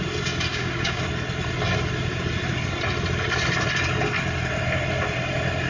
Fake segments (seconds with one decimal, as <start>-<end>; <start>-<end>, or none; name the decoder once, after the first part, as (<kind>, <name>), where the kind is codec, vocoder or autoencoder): 0.5-1.0 (codec, DAC)